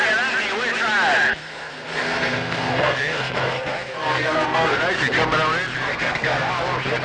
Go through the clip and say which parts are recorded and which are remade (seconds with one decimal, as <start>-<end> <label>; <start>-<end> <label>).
0.0-1.4 recorded; 1.4-4.8 remade; 4.8-5.9 recorded; 5.9-6.5 remade; 6.5-7.0 recorded